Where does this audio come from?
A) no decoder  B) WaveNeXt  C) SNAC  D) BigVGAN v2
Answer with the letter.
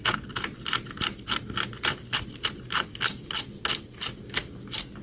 A